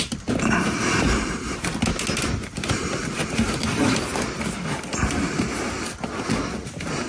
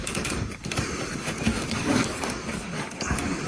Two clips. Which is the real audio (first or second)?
first